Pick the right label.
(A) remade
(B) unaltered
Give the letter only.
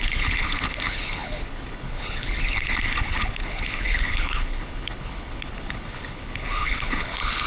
A